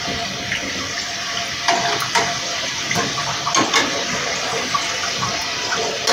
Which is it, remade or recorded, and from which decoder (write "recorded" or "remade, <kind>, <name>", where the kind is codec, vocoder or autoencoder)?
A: recorded